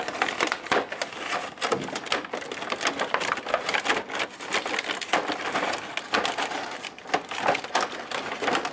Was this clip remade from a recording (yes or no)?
no